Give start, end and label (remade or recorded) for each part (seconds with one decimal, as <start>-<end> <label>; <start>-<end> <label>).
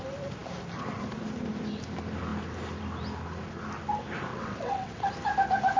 0.0-4.3 recorded; 4.3-5.1 remade; 5.1-5.8 recorded